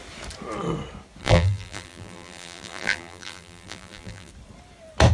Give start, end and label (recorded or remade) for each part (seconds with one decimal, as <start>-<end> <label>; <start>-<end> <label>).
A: 0.0-1.2 recorded; 1.2-4.3 remade; 4.3-5.1 recorded